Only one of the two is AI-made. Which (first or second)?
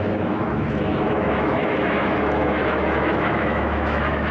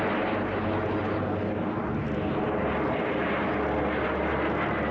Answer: first